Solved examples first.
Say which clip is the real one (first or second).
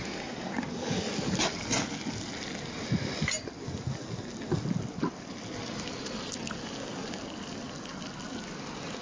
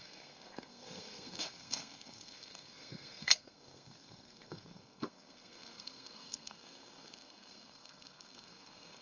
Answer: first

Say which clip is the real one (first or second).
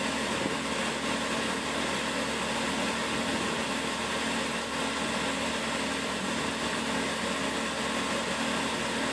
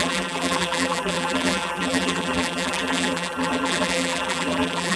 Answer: first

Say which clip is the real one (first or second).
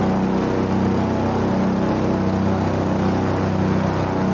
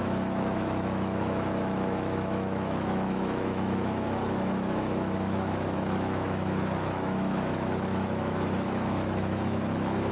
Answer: first